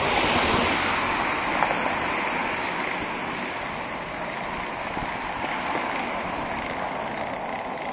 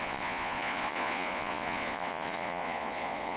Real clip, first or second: first